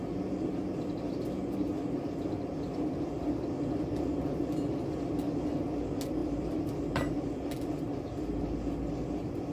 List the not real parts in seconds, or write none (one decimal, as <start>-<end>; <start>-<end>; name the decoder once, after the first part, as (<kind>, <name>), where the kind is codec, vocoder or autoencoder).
6.2-7.8 (vocoder, BigVGAN v2)

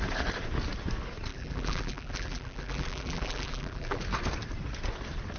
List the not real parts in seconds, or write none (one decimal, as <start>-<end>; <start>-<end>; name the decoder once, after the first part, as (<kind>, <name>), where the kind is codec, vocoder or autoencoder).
1.3-4.0 (vocoder, BigVGAN v2)

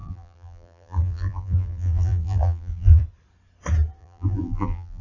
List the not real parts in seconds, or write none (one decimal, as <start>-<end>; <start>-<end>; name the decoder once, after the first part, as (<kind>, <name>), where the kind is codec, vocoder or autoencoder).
0.0-3.0 (vocoder, BigVGAN v2); 4.0-5.0

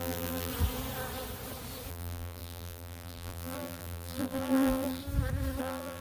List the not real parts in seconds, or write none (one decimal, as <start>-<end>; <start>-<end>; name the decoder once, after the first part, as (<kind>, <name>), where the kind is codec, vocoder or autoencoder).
0.0-0.5 (vocoder, BigVGAN v2); 1.9-5.0; 5.6-6.0

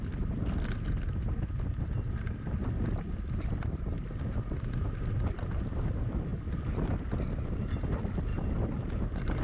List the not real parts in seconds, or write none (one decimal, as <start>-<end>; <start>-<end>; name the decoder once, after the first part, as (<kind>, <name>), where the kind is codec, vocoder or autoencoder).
none

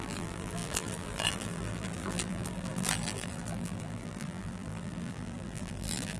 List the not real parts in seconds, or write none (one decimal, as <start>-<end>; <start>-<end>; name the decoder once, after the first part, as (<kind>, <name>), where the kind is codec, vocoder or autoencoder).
0.0-6.2 (vocoder, BigVGAN v2)